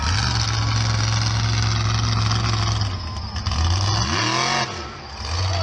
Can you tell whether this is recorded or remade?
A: recorded